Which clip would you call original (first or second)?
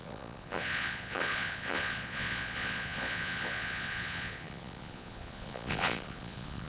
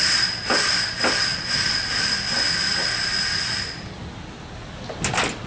second